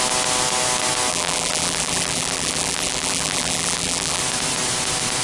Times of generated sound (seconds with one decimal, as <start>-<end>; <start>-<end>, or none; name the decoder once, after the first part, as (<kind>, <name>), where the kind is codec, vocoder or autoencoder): 1.1-4.2 (vocoder, BigVGAN v2)